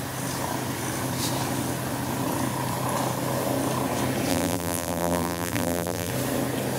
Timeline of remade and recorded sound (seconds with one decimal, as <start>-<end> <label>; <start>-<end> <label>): 0.0-4.3 recorded; 4.3-6.1 remade; 6.1-6.8 recorded